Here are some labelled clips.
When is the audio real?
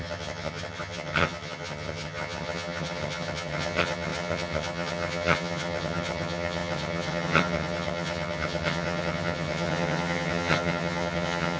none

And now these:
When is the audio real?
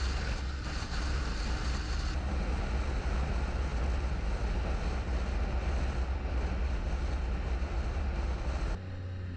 0.0-9.4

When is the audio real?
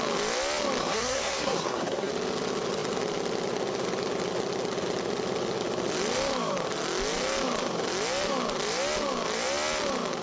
0.0-0.8; 2.1-10.2